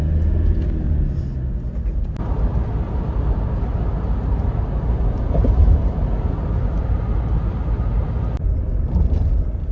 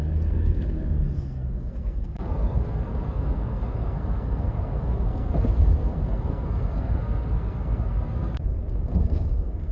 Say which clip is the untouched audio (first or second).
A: first